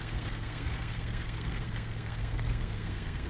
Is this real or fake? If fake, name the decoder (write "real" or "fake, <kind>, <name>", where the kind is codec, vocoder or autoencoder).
fake, codec, SNAC